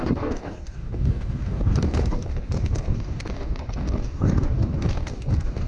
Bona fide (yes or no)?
no